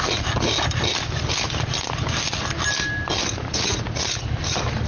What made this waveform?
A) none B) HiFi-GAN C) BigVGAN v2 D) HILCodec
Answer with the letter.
A